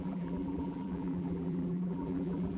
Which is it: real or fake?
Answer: fake